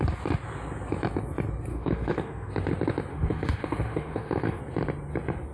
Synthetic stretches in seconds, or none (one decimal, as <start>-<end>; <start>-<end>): 1.7-2.5; 3.1-4.6